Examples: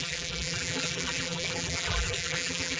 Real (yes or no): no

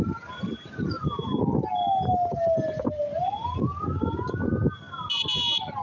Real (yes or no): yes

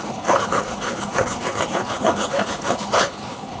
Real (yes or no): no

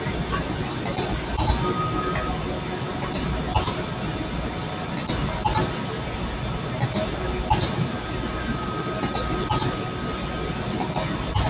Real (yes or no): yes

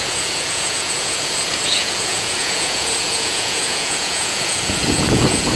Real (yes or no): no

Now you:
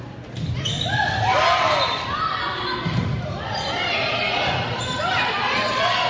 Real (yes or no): no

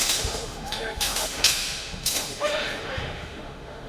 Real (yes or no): no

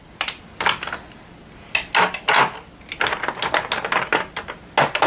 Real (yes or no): yes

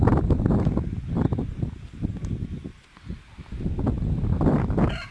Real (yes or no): yes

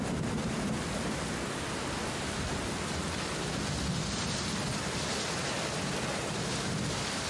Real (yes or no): yes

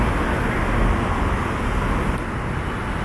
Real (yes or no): yes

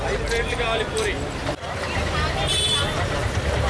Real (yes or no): yes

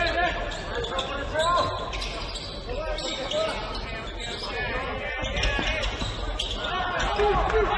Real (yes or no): yes